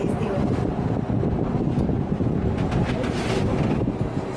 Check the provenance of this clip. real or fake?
real